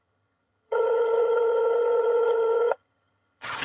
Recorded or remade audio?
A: remade